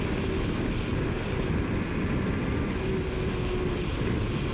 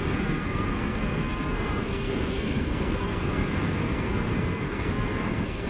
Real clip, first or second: first